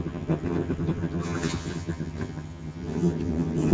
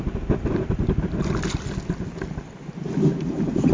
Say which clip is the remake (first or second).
first